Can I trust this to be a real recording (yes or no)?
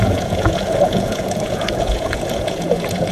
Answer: no